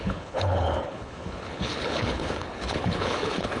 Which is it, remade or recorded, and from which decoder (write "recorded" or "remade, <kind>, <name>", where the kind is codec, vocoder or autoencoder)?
remade, codec, HILCodec